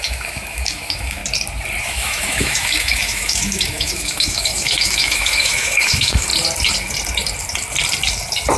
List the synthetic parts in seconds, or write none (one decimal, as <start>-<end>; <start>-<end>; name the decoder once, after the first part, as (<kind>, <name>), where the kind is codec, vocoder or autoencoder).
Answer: 0.0-1.2 (autoencoder, DAC-VAE); 1.8-6.3